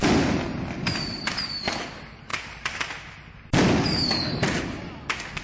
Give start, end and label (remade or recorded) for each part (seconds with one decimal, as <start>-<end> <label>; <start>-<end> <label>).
0.0-5.4 recorded